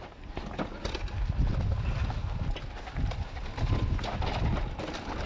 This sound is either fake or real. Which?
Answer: real